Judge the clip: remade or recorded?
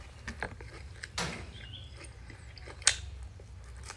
recorded